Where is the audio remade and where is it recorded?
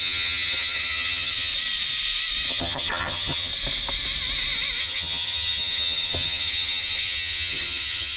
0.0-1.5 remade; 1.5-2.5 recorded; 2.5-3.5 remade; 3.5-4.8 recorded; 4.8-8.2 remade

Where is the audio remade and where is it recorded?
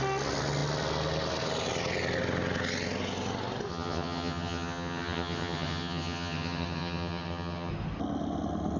0.0-3.7 recorded; 3.7-7.7 remade; 7.7-8.8 recorded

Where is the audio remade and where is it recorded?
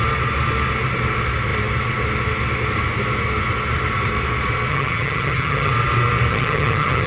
0.0-4.7 recorded; 4.7-5.7 remade; 5.7-6.3 recorded; 6.3-7.1 remade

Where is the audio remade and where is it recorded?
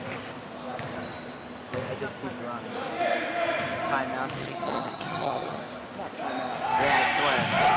0.0-4.4 recorded; 4.4-5.6 remade; 5.6-7.8 recorded